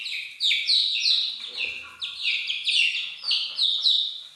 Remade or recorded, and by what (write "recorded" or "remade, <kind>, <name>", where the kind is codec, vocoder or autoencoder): recorded